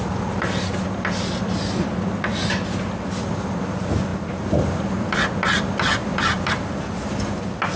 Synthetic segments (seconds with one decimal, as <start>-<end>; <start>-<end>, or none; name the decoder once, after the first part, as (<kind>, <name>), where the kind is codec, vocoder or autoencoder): 4.1-5.1 (vocoder, BigVGAN v2); 6.1-6.8